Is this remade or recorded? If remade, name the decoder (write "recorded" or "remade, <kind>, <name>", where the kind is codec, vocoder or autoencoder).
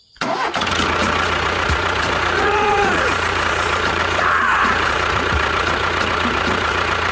remade, vocoder, Vocos